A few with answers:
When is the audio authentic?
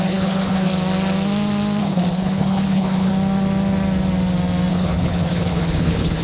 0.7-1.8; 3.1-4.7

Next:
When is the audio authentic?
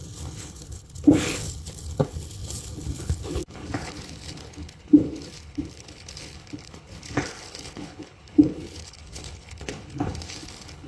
none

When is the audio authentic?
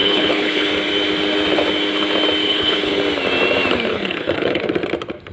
0.7-2.4; 3.0-3.9; 4.6-5.3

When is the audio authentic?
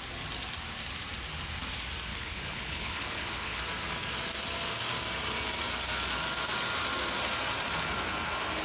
0.0-2.1; 3.6-8.6